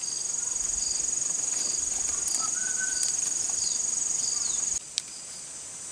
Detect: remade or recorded recorded